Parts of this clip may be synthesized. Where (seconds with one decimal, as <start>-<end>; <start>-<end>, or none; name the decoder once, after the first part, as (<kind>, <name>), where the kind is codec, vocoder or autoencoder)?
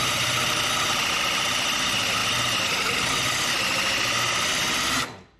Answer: none